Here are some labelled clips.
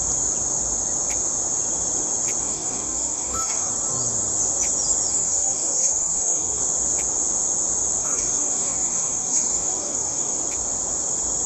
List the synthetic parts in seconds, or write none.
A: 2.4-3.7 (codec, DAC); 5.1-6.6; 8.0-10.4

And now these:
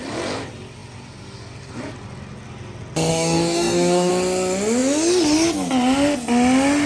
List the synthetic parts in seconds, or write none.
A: 3.1-4.1 (codec, DAC)

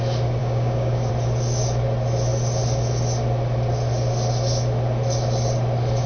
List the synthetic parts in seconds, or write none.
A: 0.4-1.1 (codec, DAC)

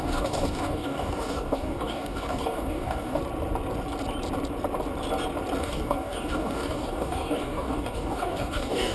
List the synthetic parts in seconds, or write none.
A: 0.0-3.2 (codec, DAC); 5.6-8.9